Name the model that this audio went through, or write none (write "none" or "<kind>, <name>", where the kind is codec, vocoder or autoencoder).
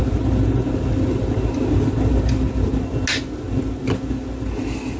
none